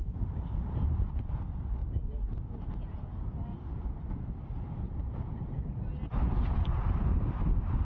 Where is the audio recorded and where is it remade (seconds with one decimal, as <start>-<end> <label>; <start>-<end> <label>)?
0.0-7.8 recorded